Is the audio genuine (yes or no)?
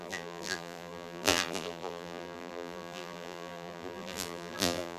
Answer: no